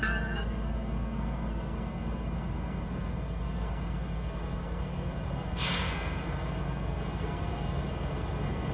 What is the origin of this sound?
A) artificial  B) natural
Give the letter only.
A